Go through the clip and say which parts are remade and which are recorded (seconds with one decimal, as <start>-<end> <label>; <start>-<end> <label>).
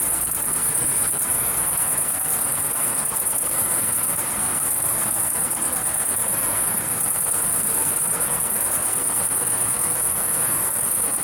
0.0-11.2 remade